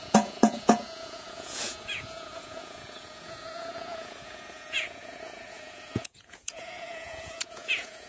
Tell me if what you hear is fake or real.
fake